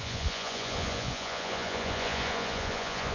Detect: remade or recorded remade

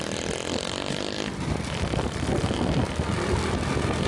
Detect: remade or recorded recorded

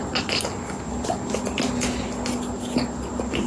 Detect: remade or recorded recorded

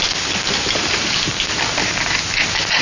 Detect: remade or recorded recorded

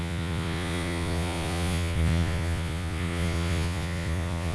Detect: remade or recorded remade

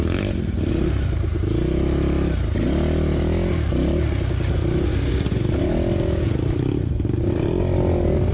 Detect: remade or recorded recorded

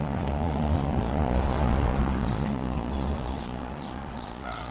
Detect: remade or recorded remade